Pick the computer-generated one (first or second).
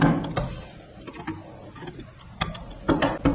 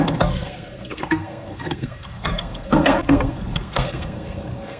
second